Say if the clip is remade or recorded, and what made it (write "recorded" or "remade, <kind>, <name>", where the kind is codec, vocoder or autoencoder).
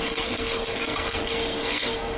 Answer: remade, codec, SNAC